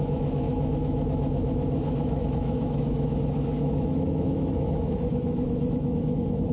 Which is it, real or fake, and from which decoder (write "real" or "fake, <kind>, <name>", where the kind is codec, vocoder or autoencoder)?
fake, autoencoder, DAC-VAE